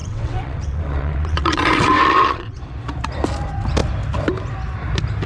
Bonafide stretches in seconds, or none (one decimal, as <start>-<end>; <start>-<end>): 2.6-5.3